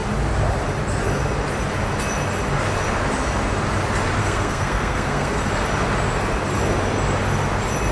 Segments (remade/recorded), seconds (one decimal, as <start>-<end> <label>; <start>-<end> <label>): 0.0-4.2 recorded; 4.2-5.4 remade; 5.4-7.9 recorded